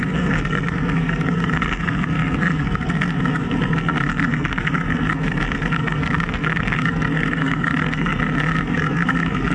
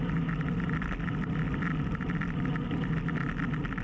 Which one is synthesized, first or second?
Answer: first